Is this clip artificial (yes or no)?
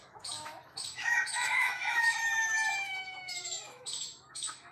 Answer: yes